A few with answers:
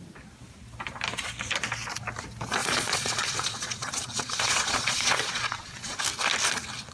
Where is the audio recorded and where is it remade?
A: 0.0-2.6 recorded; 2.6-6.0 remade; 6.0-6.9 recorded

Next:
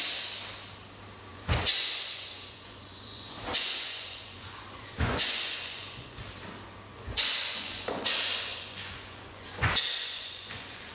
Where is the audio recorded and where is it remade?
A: 0.0-1.3 recorded; 1.3-6.2 remade; 6.2-6.9 recorded; 6.9-10.9 remade

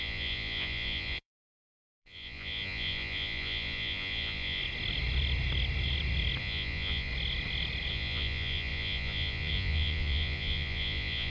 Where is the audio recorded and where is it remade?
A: 0.0-4.6 remade; 4.6-6.4 recorded; 6.4-7.1 remade; 7.1-7.9 recorded; 7.9-11.3 remade